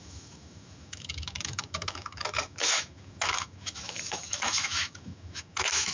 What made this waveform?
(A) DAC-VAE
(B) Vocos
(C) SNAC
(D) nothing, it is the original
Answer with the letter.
A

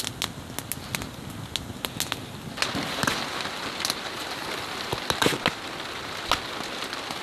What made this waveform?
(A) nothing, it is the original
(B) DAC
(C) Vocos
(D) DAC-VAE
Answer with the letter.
A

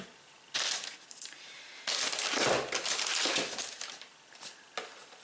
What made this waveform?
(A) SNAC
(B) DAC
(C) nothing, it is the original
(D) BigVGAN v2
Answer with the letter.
C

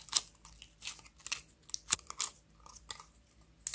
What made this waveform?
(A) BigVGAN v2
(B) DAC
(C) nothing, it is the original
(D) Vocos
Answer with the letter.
C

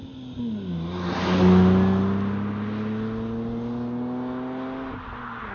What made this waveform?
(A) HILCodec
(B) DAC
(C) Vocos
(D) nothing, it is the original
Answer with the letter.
D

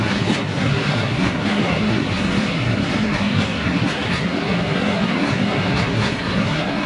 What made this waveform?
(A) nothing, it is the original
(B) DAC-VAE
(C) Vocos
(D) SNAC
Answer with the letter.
D